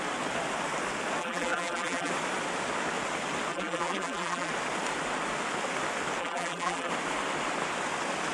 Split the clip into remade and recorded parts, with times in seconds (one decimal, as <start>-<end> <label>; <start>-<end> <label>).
0.0-1.2 recorded; 1.2-2.1 remade; 2.1-3.5 recorded; 3.5-4.5 remade; 4.5-6.2 recorded; 6.2-6.9 remade; 6.9-8.3 recorded